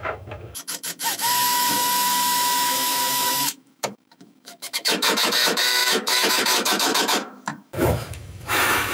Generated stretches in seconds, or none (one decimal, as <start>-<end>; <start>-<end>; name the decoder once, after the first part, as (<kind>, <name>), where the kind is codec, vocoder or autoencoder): 0.0-8.9 (autoencoder, DAC-VAE)